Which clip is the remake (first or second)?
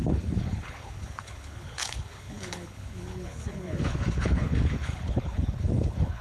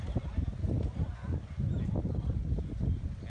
first